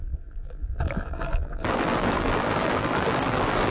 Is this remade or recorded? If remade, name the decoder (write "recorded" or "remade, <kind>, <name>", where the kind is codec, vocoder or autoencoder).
remade, vocoder, BigVGAN v2